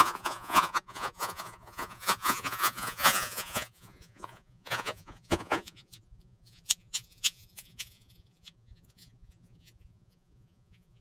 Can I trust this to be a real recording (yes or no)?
no